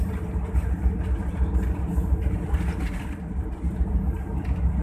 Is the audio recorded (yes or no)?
yes